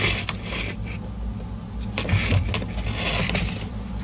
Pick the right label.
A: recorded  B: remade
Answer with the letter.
A